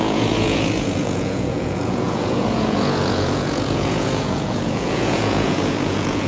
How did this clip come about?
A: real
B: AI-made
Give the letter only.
B